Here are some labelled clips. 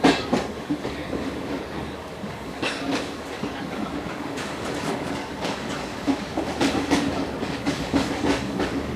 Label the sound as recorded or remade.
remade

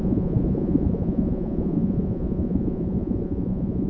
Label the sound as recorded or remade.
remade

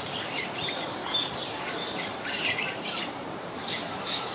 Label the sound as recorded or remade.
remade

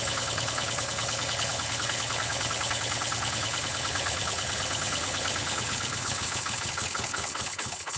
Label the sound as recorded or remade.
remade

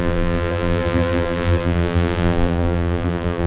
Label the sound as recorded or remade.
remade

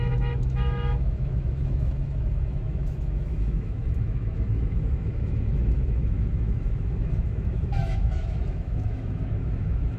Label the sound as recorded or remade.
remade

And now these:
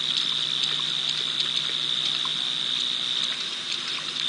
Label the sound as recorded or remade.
recorded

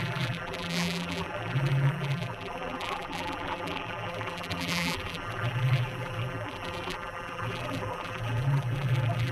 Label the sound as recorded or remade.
remade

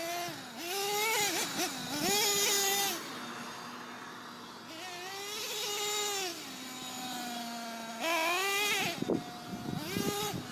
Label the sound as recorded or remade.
recorded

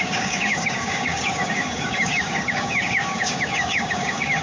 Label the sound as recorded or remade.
remade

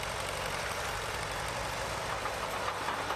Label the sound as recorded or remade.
recorded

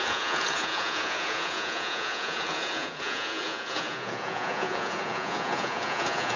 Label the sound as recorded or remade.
remade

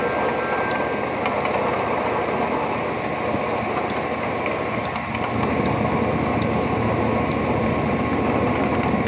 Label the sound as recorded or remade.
recorded